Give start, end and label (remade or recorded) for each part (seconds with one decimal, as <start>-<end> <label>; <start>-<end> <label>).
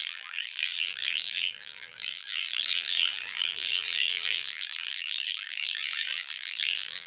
0.0-7.1 remade